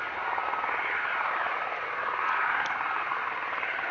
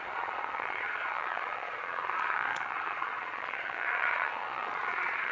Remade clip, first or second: second